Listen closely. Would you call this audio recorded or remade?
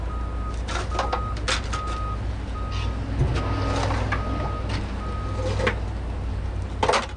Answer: recorded